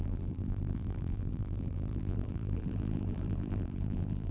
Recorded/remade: remade